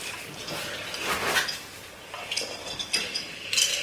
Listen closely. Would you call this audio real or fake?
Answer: real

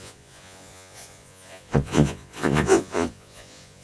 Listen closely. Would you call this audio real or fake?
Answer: fake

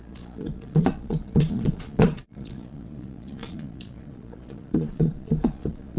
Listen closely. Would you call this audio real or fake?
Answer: fake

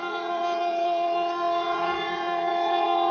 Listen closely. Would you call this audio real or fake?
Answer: fake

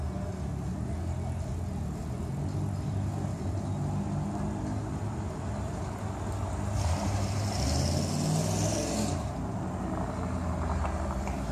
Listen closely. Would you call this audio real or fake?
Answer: real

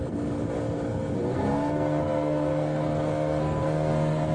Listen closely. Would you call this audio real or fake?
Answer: fake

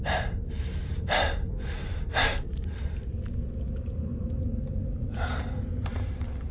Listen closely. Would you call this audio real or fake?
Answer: real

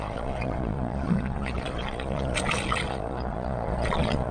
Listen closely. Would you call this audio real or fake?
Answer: fake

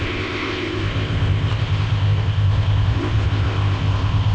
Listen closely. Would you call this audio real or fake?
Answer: fake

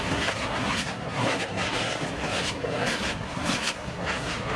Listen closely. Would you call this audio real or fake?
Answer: fake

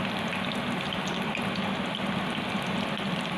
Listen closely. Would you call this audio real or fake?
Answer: real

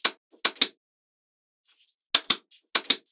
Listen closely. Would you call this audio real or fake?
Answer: real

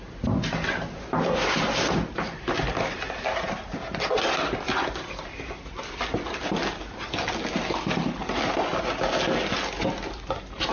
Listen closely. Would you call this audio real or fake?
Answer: real